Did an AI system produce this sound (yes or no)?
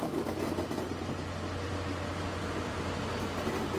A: no